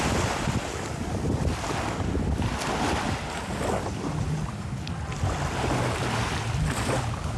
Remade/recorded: recorded